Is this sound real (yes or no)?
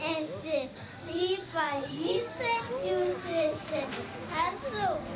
no